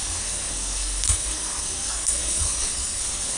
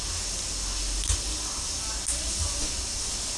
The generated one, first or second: first